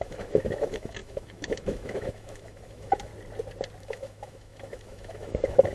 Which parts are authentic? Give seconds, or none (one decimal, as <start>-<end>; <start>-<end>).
3.1-3.8